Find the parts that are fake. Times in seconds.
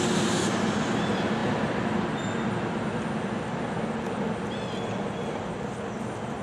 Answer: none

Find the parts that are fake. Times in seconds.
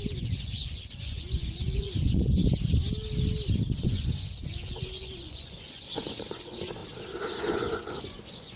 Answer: 0.0-2.4 (vocoder, Vocos); 3.8-6.8; 7.4-8.6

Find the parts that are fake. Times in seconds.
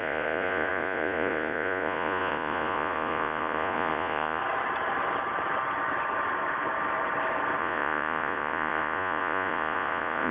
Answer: 0.0-4.4 (vocoder, Vocos); 7.6-10.3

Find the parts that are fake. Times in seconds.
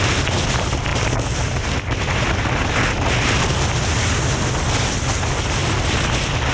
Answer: none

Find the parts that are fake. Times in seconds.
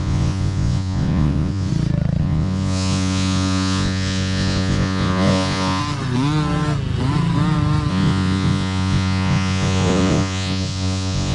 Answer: 0.0-1.7 (vocoder, Vocos); 2.2-5.8; 7.9-11.3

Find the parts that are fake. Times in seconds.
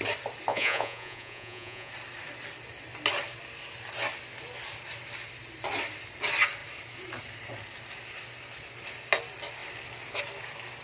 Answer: 0.5-1.9 (vocoder, Vocos)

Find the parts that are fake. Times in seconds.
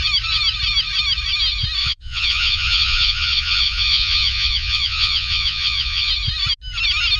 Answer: 1.8-6.1 (vocoder, Vocos)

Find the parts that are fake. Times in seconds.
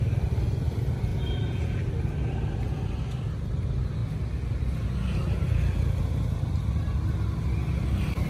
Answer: 1.1-1.9 (vocoder, Vocos)